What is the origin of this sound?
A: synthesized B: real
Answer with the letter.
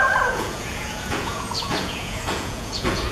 A